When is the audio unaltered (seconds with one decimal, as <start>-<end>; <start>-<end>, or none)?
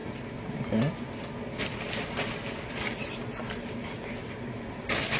0.0-5.2